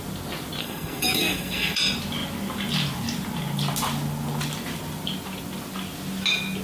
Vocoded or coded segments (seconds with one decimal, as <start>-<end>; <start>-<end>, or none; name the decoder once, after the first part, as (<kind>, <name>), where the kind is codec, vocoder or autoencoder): 0.6-1.8 (codec, SNAC)